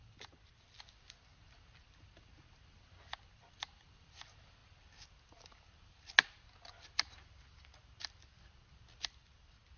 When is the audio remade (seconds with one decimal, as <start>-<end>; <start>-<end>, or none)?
none